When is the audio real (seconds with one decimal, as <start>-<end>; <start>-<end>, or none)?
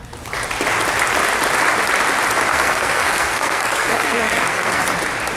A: 0.0-2.5; 4.8-5.4